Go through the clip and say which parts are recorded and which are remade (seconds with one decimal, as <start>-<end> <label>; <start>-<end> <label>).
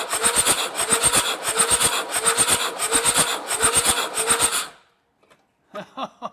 0.0-6.3 recorded